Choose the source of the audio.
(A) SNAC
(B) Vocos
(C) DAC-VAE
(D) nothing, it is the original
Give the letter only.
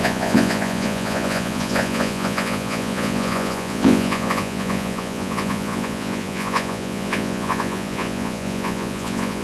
B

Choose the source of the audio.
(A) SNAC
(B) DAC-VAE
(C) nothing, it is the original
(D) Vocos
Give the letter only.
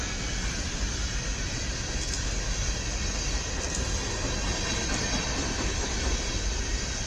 C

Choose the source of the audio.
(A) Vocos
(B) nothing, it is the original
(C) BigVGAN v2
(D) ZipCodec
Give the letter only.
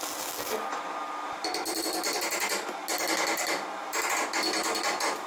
B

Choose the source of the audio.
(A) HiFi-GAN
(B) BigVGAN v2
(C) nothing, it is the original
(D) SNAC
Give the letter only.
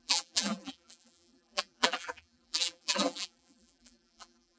B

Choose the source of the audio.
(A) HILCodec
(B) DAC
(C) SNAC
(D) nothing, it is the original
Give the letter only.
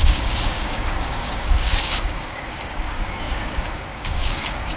B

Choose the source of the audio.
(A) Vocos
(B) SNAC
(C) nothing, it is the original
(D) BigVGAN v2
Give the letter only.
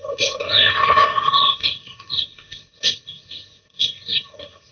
B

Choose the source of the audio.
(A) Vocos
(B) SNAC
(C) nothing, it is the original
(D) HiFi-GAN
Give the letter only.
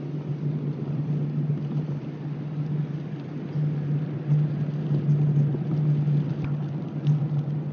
C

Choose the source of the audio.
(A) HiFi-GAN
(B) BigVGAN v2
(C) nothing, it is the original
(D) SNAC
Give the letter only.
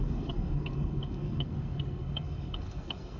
D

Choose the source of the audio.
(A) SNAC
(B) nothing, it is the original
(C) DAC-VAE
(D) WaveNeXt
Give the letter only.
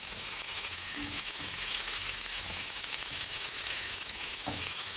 C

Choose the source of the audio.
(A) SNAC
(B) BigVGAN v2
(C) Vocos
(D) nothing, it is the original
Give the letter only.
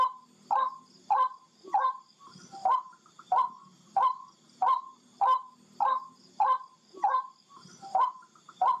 B